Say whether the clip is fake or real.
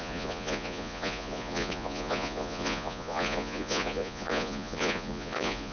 fake